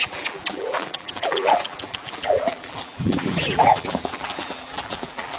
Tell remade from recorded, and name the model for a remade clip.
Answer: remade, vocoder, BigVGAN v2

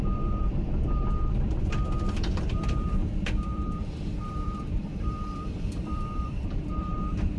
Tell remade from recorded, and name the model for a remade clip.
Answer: remade, vocoder, BigVGAN v2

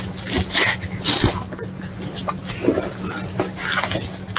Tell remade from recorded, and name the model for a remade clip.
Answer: recorded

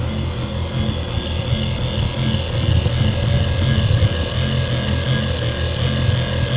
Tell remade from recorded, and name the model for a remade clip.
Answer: recorded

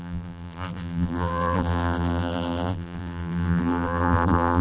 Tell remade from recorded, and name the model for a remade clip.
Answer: remade, vocoder, BigVGAN v2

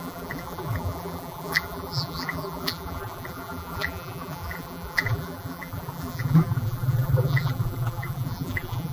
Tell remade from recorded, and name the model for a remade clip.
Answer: remade, vocoder, BigVGAN v2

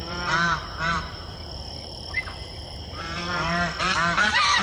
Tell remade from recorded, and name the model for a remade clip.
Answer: remade, vocoder, BigVGAN v2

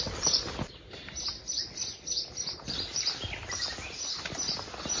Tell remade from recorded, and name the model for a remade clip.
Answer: remade, vocoder, BigVGAN v2